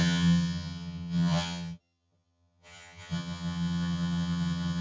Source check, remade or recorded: remade